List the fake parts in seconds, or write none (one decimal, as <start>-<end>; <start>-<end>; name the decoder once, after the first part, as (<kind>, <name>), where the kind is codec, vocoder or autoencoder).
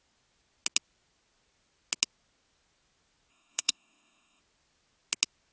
3.3-4.4 (codec, SNAC)